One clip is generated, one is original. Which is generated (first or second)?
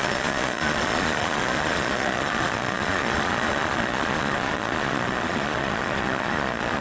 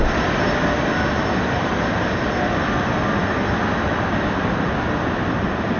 first